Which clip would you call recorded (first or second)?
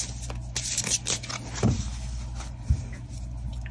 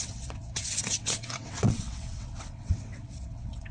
first